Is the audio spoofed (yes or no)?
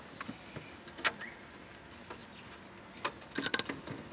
no